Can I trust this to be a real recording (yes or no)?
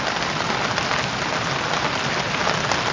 yes